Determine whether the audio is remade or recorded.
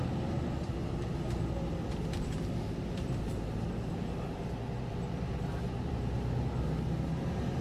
recorded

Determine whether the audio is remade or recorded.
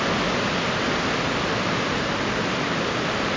recorded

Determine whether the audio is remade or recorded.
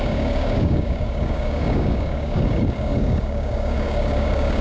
remade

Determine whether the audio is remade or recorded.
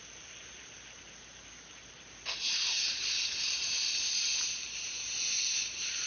recorded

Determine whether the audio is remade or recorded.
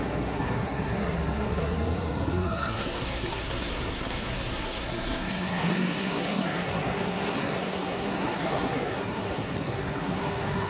remade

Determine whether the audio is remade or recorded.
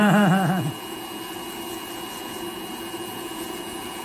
remade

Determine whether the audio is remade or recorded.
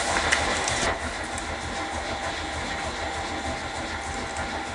recorded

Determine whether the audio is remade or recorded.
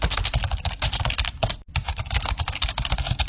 recorded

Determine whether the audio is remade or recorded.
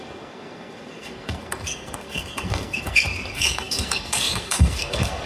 remade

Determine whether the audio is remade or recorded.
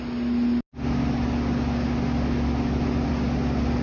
recorded